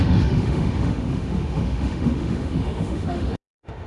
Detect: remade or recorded remade